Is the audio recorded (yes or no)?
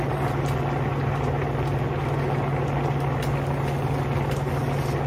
yes